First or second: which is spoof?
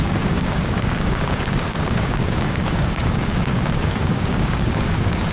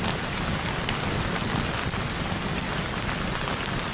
first